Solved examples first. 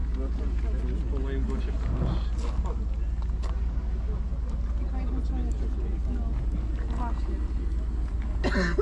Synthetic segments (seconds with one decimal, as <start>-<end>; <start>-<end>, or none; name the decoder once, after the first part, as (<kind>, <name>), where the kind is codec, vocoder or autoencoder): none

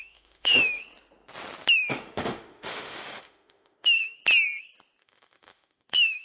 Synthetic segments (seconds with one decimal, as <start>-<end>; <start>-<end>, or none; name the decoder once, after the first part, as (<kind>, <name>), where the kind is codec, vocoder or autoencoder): 0.0-0.8 (autoencoder, DAC-VAE); 1.9-4.2; 5.0-6.2

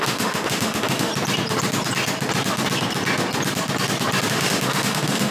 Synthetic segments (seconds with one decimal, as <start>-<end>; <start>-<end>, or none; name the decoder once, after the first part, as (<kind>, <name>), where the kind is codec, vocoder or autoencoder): 0.0-1.1 (autoencoder, DAC-VAE); 4.3-5.3

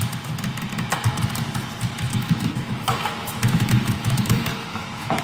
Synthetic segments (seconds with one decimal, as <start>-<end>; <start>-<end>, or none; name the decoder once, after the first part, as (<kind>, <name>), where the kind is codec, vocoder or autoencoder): 2.1-5.2 (autoencoder, DAC-VAE)

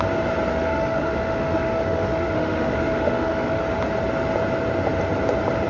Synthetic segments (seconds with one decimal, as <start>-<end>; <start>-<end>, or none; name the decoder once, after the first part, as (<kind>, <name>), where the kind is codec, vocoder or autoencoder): 0.5-3.6 (autoencoder, DAC-VAE)

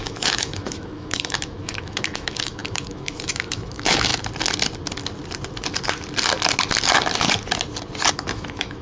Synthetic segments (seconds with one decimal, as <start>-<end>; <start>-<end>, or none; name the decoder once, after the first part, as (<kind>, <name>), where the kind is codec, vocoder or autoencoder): 0.0-4.1 (autoencoder, DAC-VAE); 8.1-8.8

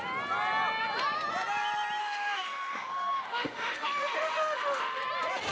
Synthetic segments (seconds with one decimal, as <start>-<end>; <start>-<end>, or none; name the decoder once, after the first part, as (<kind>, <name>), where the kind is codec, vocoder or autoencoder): 2.0-5.0 (autoencoder, DAC-VAE)

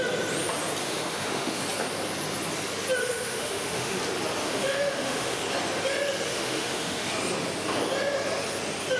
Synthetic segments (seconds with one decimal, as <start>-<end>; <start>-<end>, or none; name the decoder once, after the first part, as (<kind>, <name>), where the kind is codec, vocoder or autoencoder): 0.8-1.6 (autoencoder, DAC-VAE); 3.0-4.0; 4.4-5.4; 6.3-7.1